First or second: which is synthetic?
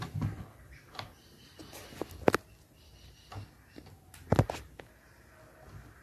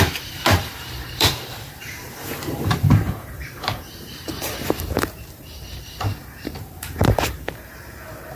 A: second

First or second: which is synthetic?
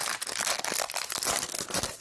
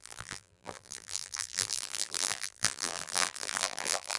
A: second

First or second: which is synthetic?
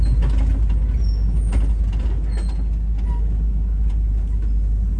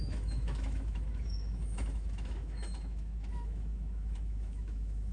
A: second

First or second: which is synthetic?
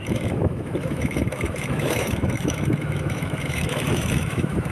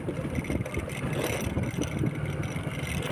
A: first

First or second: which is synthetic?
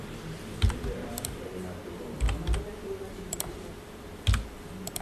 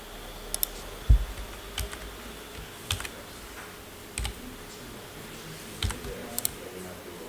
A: first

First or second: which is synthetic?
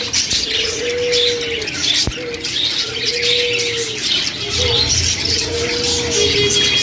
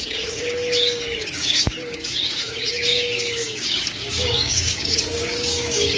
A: second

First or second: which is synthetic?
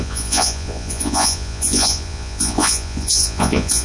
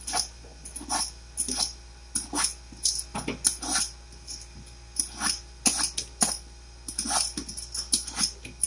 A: first